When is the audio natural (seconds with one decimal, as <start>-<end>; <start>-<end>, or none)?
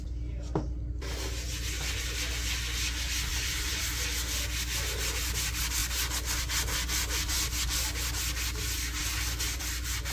0.0-3.3; 3.8-10.1